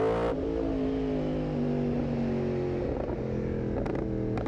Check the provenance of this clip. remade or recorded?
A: recorded